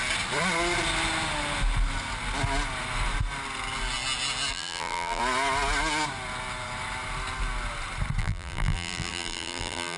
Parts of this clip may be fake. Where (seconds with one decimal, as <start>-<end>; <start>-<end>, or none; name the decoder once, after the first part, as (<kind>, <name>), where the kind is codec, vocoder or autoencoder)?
4.5-5.2 (vocoder, BigVGAN v2); 8.2-10.0